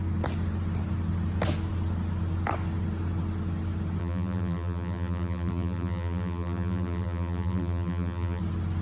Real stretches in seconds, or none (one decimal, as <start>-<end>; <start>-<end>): 0.0-4.0; 8.4-8.8